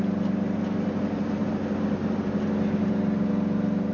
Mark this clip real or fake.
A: real